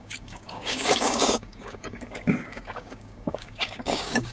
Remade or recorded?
remade